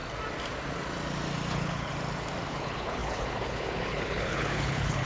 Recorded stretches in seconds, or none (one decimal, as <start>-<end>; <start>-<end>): 0.0-1.5; 1.9-2.5